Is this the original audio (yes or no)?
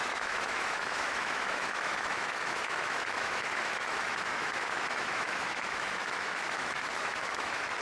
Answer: no